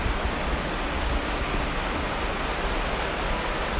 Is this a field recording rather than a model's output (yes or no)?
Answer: yes